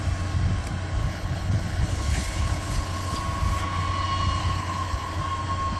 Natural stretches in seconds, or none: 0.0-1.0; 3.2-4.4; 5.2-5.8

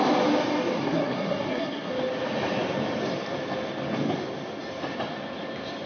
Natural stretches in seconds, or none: 0.0-0.8; 1.9-5.9

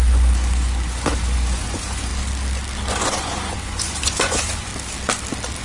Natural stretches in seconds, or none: 2.1-2.9; 4.7-5.6

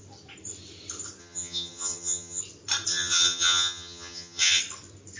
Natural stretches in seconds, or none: 0.0-1.2; 2.4-2.9; 4.6-5.2

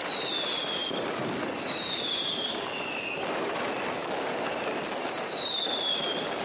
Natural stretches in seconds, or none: 0.0-6.4

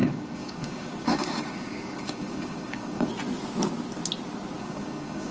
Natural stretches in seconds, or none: 3.1-4.6